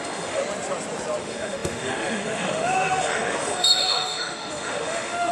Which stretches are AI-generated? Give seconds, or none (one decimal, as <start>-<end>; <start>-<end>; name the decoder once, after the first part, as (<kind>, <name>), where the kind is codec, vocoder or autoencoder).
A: 0.0-0.4 (autoencoder, DAC-VAE); 1.2-5.3